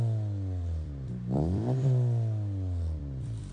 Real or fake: fake